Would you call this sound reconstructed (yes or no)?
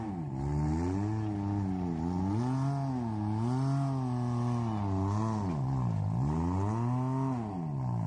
no